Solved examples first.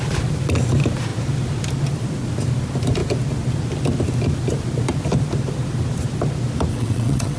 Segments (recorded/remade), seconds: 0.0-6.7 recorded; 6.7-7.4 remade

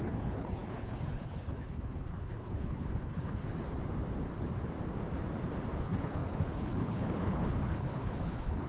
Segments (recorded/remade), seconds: 0.0-3.5 remade; 3.5-5.8 recorded; 5.8-8.7 remade

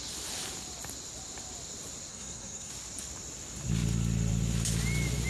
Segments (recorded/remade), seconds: 0.0-2.1 recorded; 2.1-2.7 remade; 2.7-5.3 recorded

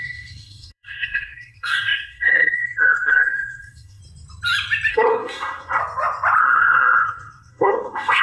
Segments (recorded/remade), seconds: 0.0-4.0 remade; 4.0-4.9 recorded; 4.9-5.8 remade; 5.8-6.4 recorded; 6.4-8.2 remade

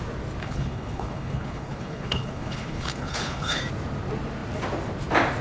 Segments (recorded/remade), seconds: 0.0-0.4 recorded; 0.4-3.6 remade; 3.6-5.4 recorded